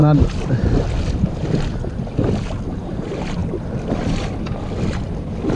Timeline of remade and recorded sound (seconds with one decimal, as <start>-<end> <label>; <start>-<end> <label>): 0.0-5.6 recorded